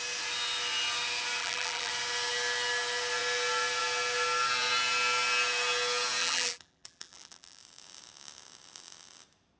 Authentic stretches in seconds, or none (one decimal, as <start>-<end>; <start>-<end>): 0.0-1.4; 1.9-6.2; 7.6-9.6